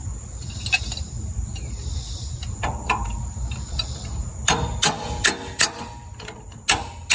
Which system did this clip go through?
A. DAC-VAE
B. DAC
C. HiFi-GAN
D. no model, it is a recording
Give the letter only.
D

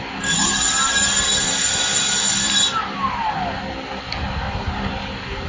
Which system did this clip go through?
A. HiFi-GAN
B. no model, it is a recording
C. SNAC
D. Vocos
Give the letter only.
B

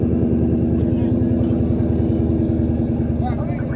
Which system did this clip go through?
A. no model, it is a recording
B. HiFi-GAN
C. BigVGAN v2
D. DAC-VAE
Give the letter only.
A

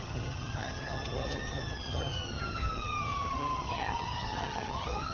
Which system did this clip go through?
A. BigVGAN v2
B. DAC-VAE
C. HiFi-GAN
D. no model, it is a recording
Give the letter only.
C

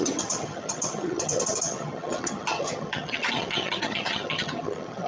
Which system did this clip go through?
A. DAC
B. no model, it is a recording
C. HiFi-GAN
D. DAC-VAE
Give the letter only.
C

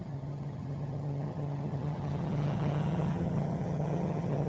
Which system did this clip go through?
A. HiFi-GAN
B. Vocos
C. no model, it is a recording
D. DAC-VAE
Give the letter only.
A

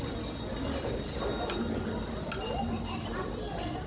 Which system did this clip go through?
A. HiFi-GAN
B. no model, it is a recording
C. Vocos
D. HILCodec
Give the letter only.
B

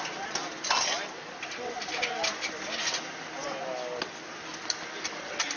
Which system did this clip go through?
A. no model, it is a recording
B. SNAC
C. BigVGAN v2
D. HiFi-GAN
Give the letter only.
A